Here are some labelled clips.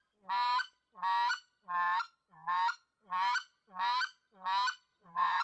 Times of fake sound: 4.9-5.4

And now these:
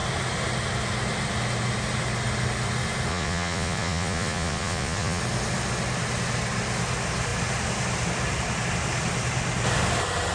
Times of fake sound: 3.1-5.2

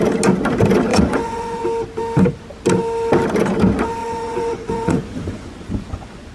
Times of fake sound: 0.9-1.6; 4.0-6.3

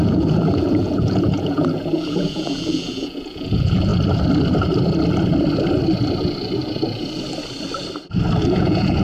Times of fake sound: 0.0-3.9; 8.5-9.0